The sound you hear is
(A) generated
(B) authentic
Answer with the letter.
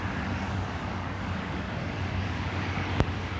A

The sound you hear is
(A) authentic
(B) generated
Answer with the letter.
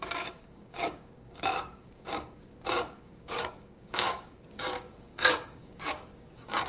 B